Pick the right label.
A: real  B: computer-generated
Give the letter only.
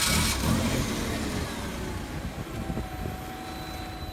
A